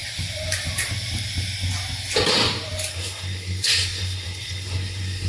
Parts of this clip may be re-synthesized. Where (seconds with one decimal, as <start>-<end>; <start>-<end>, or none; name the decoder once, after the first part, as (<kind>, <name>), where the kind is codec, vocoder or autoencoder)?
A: 2.9-5.3 (codec, SNAC)